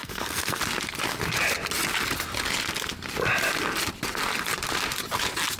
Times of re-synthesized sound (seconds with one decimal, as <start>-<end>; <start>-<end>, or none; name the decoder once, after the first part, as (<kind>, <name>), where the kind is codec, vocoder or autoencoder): 0.0-0.6 (codec, SNAC)